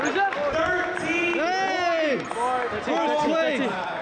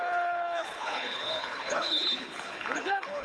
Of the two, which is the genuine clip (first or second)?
first